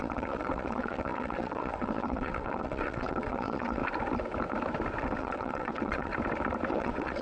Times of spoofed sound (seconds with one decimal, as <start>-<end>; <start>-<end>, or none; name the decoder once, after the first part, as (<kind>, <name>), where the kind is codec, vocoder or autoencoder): 0.0-3.8 (vocoder, WaveNeXt); 5.0-6.1; 6.7-7.2